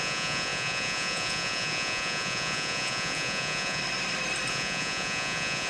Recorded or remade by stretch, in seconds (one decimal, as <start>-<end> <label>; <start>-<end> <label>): 0.0-3.8 remade; 3.8-4.5 recorded; 4.5-5.7 remade